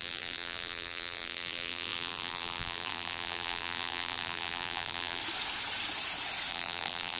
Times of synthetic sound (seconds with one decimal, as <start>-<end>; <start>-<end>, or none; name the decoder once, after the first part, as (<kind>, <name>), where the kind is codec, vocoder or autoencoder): 0.0-5.2 (vocoder, BigVGAN v2); 6.5-7.2